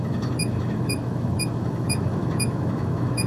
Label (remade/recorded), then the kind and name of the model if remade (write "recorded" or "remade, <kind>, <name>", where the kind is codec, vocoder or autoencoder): remade, autoencoder, DAC-VAE